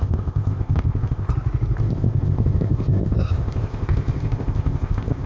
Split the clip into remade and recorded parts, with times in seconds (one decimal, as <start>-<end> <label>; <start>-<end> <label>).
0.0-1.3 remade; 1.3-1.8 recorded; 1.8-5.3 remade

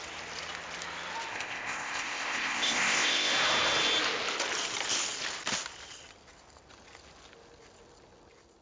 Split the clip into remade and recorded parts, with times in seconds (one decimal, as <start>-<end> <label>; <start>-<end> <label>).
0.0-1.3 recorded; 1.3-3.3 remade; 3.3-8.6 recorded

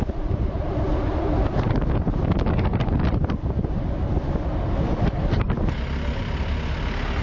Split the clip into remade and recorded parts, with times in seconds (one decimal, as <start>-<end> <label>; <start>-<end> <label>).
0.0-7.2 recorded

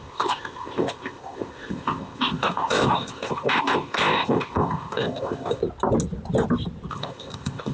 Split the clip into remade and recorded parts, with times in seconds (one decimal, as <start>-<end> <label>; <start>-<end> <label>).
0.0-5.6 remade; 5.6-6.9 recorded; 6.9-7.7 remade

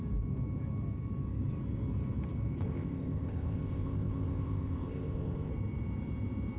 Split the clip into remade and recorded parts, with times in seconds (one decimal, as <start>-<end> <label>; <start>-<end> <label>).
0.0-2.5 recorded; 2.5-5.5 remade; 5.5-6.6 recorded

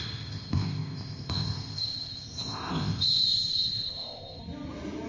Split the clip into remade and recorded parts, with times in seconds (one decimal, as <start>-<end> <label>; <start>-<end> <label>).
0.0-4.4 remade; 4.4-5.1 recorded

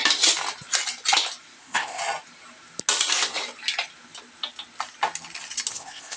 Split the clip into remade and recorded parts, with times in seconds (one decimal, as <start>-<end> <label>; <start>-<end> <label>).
0.0-1.6 recorded; 1.6-2.0 remade; 2.0-5.7 recorded; 5.7-6.2 remade